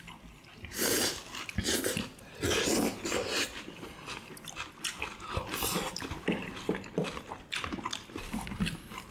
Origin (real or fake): real